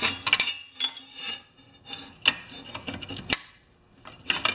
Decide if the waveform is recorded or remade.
recorded